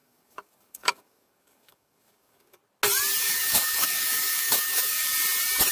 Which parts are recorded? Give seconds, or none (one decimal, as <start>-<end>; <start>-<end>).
2.6-3.2; 5.1-5.7